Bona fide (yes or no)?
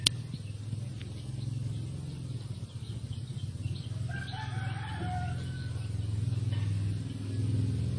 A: yes